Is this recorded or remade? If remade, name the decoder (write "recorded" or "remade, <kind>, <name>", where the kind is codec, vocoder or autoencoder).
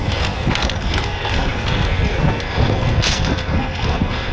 remade, codec, SNAC